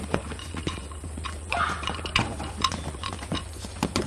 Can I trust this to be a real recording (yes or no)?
no